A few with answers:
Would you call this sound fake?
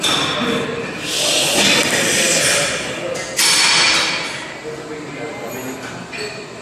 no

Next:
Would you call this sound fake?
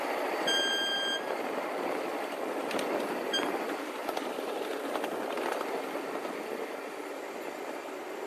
no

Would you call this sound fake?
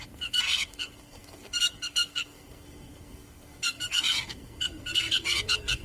yes